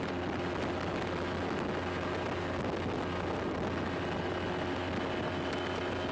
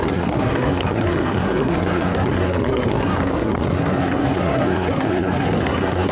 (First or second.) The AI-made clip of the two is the second